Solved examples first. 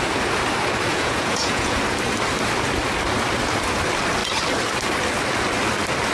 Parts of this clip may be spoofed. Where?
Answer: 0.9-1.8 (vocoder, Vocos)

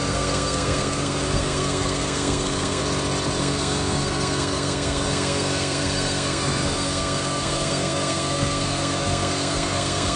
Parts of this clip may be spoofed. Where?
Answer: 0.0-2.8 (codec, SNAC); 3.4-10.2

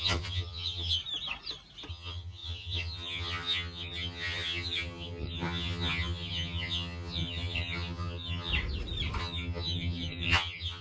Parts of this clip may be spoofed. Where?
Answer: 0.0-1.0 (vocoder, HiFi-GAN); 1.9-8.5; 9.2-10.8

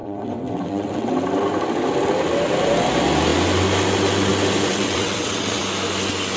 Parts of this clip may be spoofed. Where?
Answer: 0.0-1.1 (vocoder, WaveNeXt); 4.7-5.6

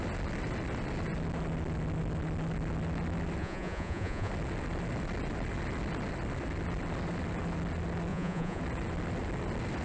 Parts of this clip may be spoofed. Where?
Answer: 3.4-4.3 (vocoder, Vocos); 8.1-8.6